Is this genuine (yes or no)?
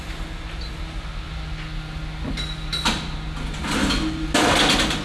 yes